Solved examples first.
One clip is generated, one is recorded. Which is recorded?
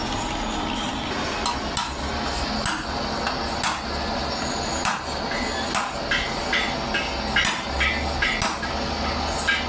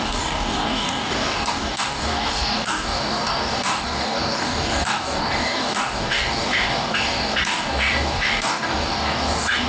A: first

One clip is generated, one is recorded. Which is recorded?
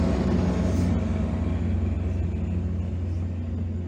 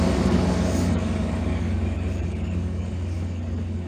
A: first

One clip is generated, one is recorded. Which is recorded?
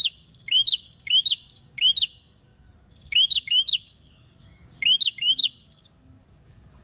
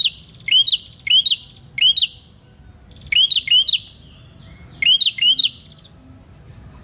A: second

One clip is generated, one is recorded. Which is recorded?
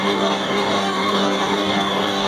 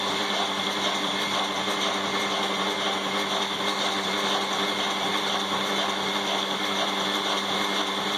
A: second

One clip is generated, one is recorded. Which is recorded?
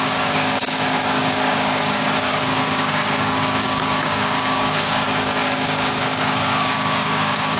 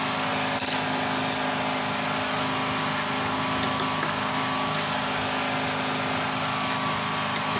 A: second